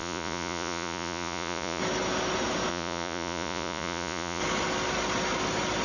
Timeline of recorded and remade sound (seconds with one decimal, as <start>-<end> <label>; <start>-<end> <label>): 0.0-1.8 remade; 1.8-2.7 recorded; 2.7-4.4 remade; 4.4-5.8 recorded